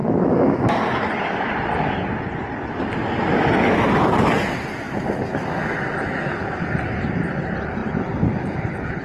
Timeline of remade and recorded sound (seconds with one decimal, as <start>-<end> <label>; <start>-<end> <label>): 0.0-0.7 remade; 0.7-9.0 recorded